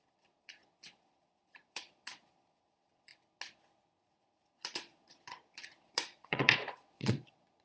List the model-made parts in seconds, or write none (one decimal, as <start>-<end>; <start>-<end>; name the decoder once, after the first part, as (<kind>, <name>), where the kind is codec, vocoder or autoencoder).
0.0-3.1 (vocoder, Vocos); 4.5-7.6